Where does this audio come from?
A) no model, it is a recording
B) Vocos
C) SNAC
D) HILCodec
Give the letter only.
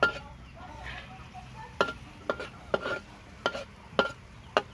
A